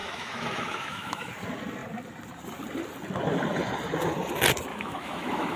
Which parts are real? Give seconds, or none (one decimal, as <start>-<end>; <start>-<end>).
1.3-4.7